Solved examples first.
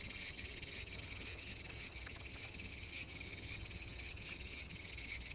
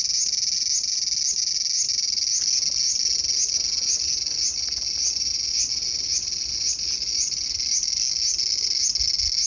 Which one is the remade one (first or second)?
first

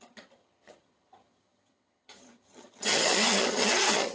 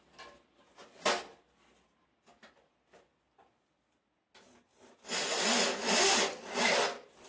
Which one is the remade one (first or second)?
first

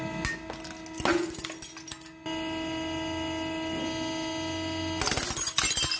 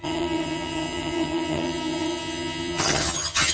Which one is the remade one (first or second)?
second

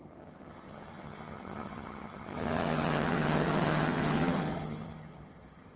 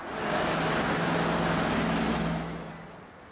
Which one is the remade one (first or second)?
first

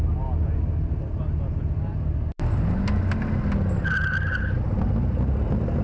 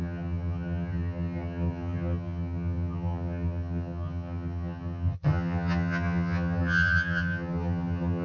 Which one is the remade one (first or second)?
second